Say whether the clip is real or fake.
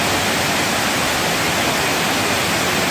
real